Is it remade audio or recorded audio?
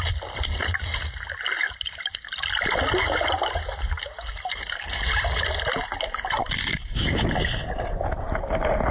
recorded